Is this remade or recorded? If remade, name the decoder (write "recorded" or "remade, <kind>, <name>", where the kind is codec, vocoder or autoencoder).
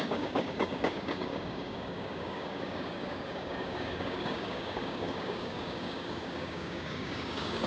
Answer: remade, codec, DAC